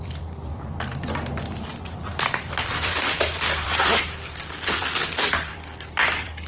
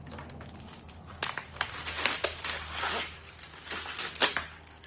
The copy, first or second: first